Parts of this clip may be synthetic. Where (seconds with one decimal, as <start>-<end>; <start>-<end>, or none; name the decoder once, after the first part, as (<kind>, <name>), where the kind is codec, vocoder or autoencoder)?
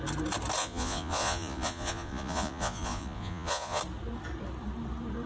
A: 0.6-3.8 (vocoder, Vocos)